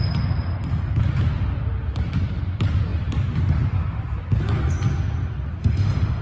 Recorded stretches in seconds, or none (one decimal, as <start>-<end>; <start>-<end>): 0.0-5.6